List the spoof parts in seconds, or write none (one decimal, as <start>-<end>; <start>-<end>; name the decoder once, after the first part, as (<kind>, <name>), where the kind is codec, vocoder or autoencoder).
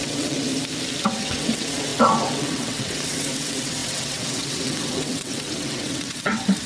0.0-0.5 (vocoder, WaveNeXt); 1.0-6.7